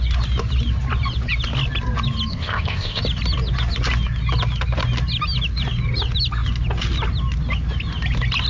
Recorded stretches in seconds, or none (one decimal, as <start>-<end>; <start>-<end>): 0.0-2.3; 3.0-8.5